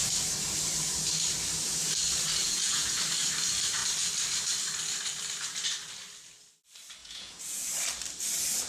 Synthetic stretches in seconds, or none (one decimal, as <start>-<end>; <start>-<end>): 2.4-3.0; 7.0-7.7